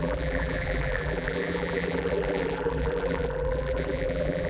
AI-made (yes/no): yes